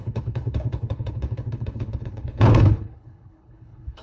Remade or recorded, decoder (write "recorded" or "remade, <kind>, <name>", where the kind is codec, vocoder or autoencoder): remade, codec, HILCodec